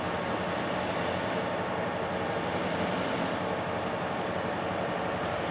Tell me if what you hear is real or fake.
real